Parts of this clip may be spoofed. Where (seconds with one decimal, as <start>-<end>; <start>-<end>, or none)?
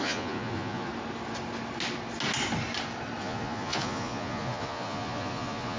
0.0-0.9; 3.2-5.8